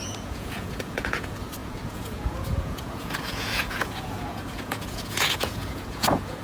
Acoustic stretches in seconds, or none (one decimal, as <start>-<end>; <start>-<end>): none